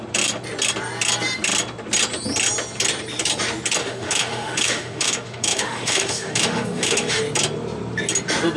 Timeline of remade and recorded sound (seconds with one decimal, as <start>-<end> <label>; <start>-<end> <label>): 0.0-3.8 recorded; 3.8-7.2 remade; 7.2-8.6 recorded

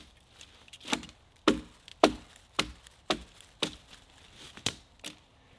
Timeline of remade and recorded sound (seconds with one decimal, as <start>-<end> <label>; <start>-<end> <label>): 0.0-5.6 recorded

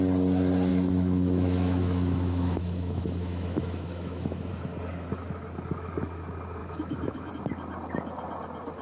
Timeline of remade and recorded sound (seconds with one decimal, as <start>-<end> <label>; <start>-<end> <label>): 0.0-0.7 recorded; 0.7-4.5 remade; 4.5-6.6 recorded; 6.6-7.3 remade; 7.3-8.8 recorded

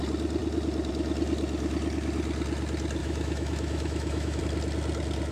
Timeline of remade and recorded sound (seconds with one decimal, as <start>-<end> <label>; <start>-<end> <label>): 0.0-3.0 recorded; 3.0-4.4 remade; 4.4-5.3 recorded

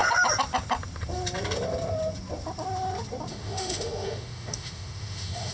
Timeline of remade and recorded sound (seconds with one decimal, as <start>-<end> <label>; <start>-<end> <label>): 0.0-3.3 recorded; 3.3-5.5 remade

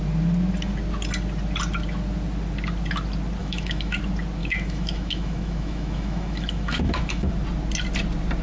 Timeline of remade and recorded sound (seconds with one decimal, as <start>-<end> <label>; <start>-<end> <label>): 0.0-3.4 recorded; 3.4-4.0 remade; 4.0-4.4 recorded; 4.4-7.3 remade; 7.3-8.4 recorded

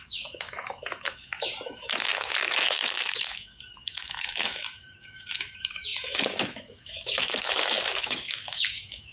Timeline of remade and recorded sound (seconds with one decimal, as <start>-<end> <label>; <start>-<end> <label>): 0.0-9.1 remade

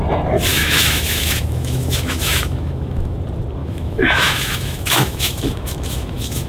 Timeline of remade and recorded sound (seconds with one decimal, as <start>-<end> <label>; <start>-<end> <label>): 0.0-0.5 recorded; 0.5-3.2 remade; 3.2-3.6 recorded; 3.6-6.5 remade